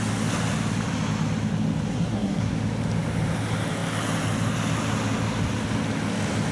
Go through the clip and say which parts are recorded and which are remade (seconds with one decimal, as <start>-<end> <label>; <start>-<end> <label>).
0.0-1.9 recorded; 1.9-2.5 remade; 2.5-6.5 recorded